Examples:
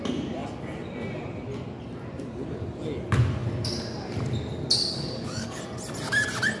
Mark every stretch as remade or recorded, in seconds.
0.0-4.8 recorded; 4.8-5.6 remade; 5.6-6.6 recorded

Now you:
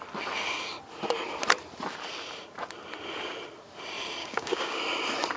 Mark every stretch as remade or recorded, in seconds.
0.0-4.2 recorded; 4.2-4.8 remade; 4.8-5.4 recorded